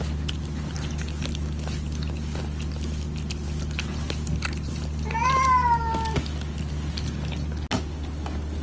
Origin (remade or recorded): recorded